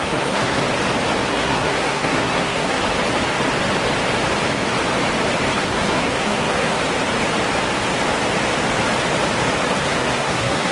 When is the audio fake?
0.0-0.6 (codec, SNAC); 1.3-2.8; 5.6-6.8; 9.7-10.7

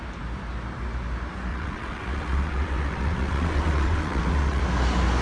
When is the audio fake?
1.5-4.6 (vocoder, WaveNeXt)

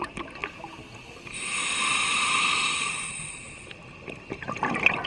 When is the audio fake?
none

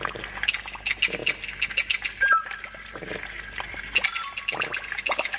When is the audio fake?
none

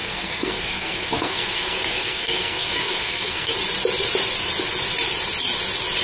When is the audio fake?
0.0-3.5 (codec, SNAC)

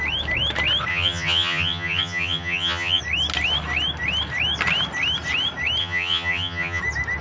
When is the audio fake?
0.9-3.0 (vocoder, HiFi-GAN); 5.8-6.8